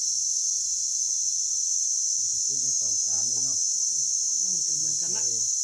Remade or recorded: recorded